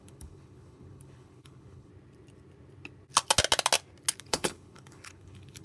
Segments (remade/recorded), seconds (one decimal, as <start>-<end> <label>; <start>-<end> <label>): 0.0-1.9 remade; 1.9-4.2 recorded; 4.2-5.6 remade